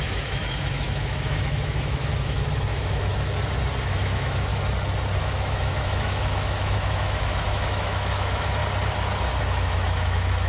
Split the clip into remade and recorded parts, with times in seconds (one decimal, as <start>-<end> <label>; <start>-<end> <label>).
0.0-3.1 remade; 3.1-3.9 recorded; 3.9-4.5 remade; 4.5-5.2 recorded; 5.2-8.6 remade; 8.6-9.4 recorded; 9.4-10.5 remade